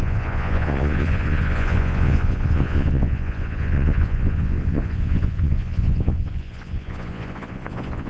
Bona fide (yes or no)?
no